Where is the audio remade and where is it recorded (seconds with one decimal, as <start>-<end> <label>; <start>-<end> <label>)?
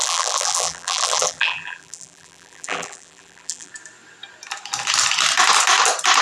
0.0-3.7 remade; 3.7-6.2 recorded